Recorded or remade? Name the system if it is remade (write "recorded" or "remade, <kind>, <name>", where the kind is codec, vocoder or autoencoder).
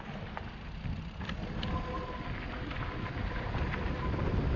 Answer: recorded